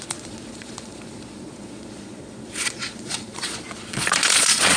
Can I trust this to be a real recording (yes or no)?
no